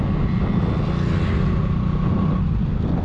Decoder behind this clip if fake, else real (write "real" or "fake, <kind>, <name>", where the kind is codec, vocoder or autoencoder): real